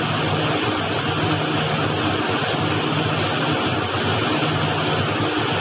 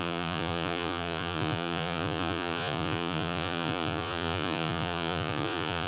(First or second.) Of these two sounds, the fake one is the second